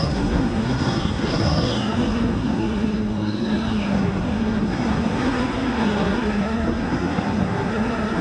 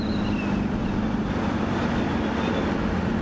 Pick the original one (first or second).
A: second